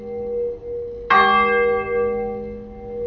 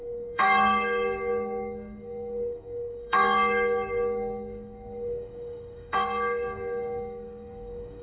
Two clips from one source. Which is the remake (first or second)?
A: second